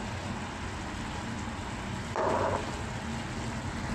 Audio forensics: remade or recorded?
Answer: recorded